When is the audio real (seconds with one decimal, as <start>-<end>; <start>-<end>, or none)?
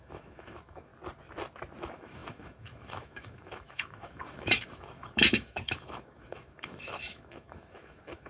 0.9-1.8